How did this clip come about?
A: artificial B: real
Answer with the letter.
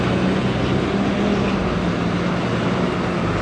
B